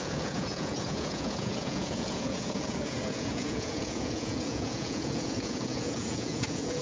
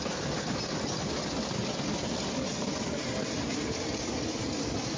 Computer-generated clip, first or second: first